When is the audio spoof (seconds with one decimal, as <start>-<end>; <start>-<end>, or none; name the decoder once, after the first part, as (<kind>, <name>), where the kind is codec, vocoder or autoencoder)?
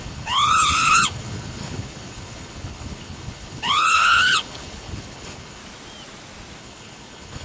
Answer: 0.0-5.6 (codec, HILCodec); 6.6-7.4